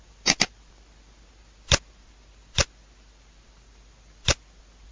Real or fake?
real